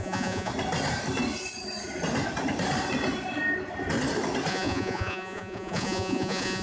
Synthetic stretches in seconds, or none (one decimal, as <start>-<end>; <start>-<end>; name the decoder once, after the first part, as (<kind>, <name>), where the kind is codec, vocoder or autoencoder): 0.0-0.5 (vocoder, Vocos); 4.5-6.6